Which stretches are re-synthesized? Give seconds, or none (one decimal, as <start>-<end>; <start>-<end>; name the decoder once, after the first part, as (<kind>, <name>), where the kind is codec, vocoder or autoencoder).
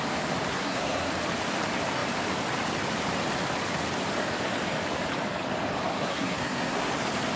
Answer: 0.5-1.1 (codec, SNAC); 5.9-6.9